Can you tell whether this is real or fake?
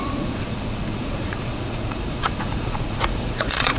fake